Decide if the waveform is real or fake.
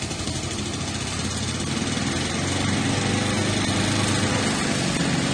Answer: real